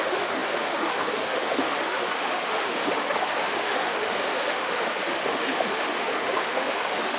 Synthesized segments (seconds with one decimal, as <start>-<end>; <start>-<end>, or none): 0.0-7.2